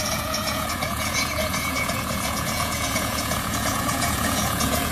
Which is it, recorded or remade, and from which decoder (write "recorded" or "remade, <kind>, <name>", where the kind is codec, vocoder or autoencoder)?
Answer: remade, vocoder, Vocos